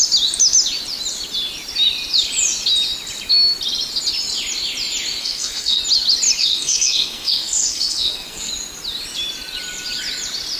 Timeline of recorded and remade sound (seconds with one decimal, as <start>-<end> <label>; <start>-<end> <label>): 0.0-5.2 recorded; 5.2-5.8 remade; 5.8-6.4 recorded; 6.4-8.5 remade; 8.5-10.6 recorded

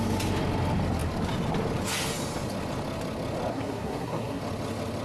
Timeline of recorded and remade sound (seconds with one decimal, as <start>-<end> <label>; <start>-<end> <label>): 0.0-3.5 recorded; 3.5-4.4 remade; 4.4-5.0 recorded